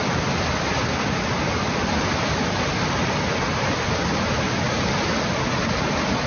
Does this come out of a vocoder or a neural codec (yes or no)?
no